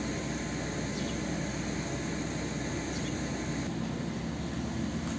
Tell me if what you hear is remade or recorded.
recorded